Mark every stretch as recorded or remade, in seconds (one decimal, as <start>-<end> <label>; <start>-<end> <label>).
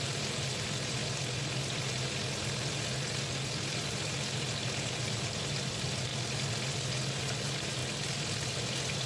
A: 0.0-1.0 remade; 1.0-5.0 recorded; 5.0-6.1 remade; 6.1-7.2 recorded; 7.2-7.8 remade; 7.8-9.1 recorded